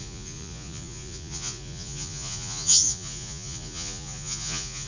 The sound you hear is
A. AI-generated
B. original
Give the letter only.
A